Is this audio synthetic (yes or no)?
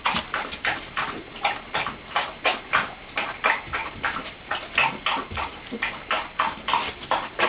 no